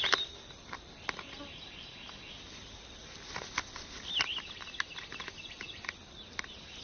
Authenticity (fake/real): real